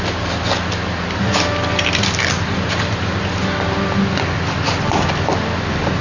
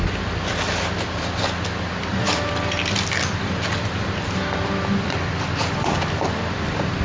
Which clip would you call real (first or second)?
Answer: first